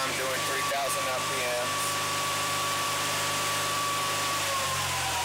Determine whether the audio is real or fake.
fake